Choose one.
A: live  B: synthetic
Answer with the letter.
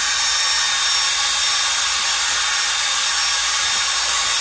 A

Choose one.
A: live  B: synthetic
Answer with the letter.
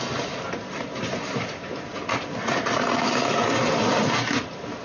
A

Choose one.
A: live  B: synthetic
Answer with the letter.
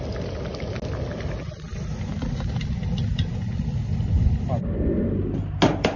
A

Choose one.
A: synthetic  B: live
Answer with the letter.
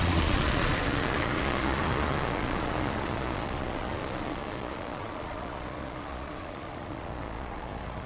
A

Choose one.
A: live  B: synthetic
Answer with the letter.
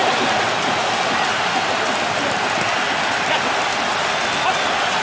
A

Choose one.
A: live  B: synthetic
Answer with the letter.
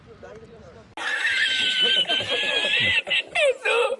A